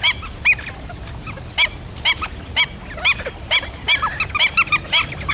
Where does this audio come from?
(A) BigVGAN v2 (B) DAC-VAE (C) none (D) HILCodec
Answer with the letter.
C